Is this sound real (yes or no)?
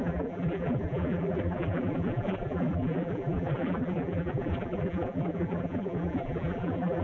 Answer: no